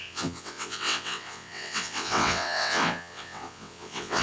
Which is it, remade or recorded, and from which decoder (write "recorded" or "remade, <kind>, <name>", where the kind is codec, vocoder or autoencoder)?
remade, vocoder, WaveNeXt